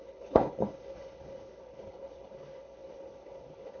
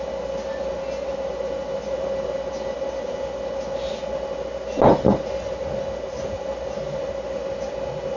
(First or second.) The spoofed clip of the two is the first